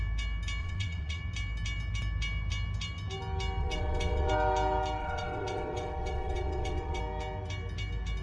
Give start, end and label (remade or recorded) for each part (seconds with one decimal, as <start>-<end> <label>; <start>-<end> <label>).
0.0-0.6 recorded; 0.6-1.2 remade; 1.2-3.6 recorded; 3.6-4.3 remade; 4.3-5.0 recorded; 5.0-7.0 remade; 7.0-8.2 recorded